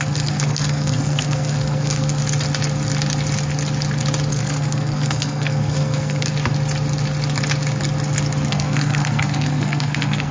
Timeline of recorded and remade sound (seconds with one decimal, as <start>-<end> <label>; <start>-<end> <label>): 0.0-2.2 remade; 2.2-4.3 recorded; 4.3-6.3 remade; 6.3-8.5 recorded; 8.5-10.3 remade